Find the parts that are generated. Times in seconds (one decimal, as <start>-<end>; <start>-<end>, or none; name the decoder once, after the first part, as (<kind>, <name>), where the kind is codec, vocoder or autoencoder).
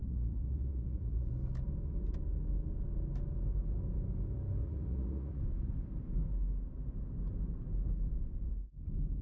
0.0-1.3 (vocoder, Vocos); 4.6-5.4